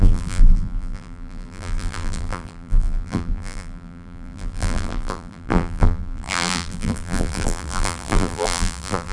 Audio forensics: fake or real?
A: fake